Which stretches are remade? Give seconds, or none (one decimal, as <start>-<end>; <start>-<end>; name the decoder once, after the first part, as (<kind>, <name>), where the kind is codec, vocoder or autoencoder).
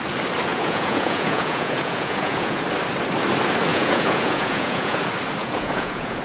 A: 0.5-2.6 (vocoder, Vocos); 3.7-5.0; 5.4-6.2